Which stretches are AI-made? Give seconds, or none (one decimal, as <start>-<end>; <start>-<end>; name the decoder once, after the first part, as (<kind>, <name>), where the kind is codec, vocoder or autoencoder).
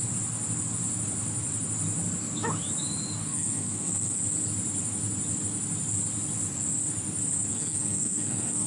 3.2-4.2 (codec, SNAC); 7.5-8.7